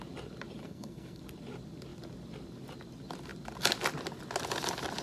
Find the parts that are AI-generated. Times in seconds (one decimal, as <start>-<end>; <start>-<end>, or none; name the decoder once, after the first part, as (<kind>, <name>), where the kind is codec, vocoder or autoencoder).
0.6-1.2 (codec, SNAC)